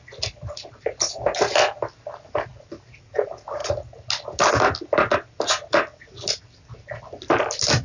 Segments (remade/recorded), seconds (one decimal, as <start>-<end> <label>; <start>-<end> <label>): 0.0-7.8 recorded